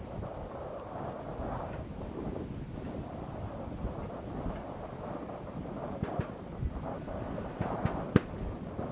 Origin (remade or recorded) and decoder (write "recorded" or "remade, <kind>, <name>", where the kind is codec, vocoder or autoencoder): recorded